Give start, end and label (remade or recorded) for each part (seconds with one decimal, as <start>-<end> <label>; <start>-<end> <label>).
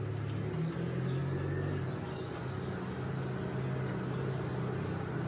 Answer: 0.0-5.3 recorded